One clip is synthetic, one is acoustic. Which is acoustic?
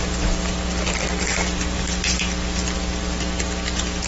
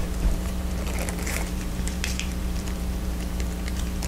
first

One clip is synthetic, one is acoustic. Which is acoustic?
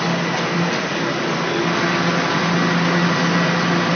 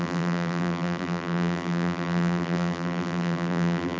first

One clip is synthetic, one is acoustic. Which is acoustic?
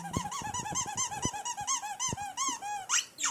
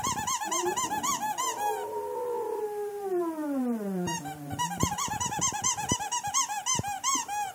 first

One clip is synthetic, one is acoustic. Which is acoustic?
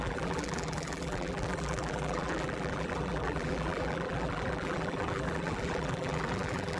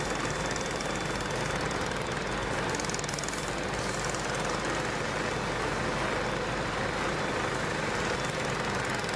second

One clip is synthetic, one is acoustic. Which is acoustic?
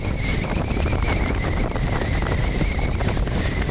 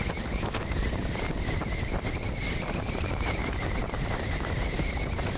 first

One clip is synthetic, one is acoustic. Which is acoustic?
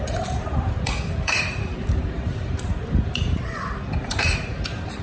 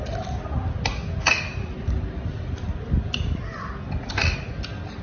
second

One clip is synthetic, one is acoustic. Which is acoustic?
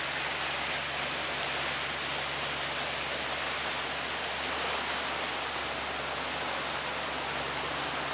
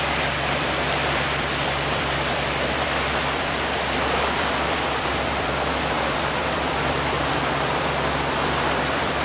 first